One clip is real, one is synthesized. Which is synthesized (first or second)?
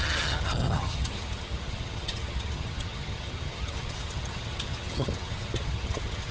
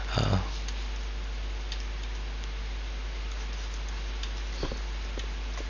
first